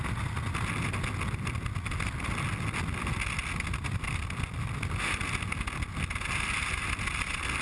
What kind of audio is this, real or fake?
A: real